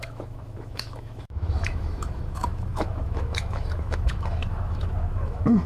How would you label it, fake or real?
fake